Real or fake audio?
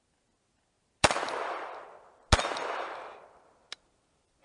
real